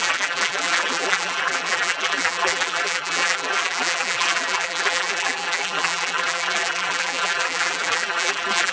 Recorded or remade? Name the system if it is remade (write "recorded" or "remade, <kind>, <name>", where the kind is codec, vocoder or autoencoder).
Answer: remade, vocoder, BigVGAN v2